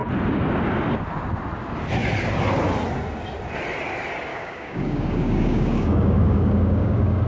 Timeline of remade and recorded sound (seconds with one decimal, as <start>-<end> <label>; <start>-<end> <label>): 0.0-4.3 recorded; 4.3-7.3 remade